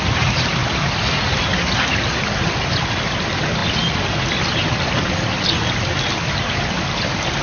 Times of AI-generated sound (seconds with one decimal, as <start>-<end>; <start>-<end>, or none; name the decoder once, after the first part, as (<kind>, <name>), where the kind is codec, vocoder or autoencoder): none